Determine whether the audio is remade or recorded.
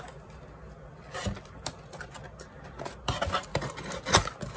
recorded